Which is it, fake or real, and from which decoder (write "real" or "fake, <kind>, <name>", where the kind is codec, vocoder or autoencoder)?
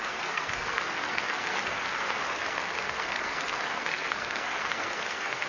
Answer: fake, codec, SNAC